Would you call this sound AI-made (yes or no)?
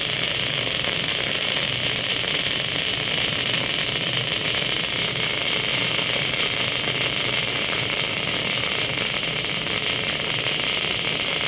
yes